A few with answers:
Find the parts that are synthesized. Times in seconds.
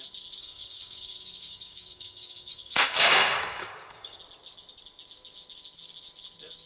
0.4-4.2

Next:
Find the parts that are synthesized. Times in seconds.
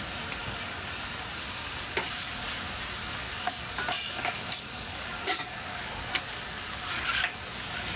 0.4-1.0; 1.6-2.4; 3.0-7.4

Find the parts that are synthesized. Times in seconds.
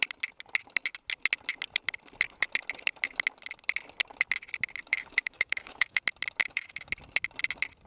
4.9-6.0; 6.4-6.9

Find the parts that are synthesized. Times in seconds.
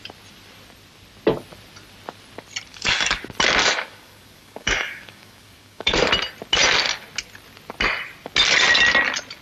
2.7-3.2; 3.6-6.1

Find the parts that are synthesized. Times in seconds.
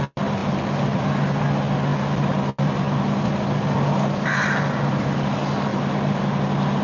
none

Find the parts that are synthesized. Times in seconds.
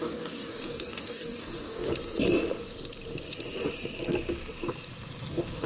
0.0-1.9; 5.3-5.7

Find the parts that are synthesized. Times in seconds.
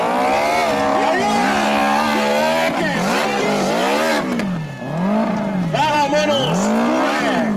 none